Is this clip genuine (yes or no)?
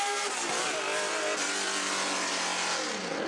yes